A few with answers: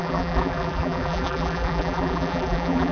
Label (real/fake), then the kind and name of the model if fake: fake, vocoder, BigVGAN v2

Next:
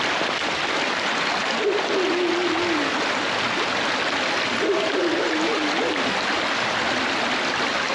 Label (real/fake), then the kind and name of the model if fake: real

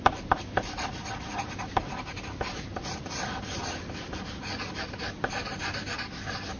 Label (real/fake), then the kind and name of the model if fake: real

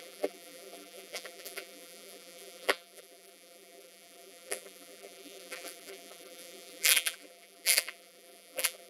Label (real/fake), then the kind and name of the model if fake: fake, vocoder, BigVGAN v2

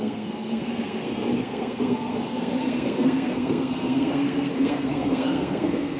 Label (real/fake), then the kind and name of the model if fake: fake, codec, SNAC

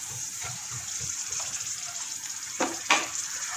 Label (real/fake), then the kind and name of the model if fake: fake, vocoder, BigVGAN v2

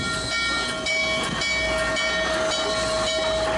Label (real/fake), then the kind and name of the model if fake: real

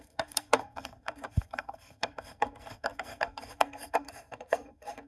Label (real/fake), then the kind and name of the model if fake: fake, codec, SNAC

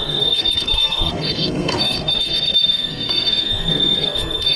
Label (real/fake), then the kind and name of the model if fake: fake, codec, SNAC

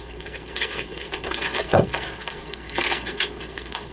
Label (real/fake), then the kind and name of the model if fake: fake, codec, SNAC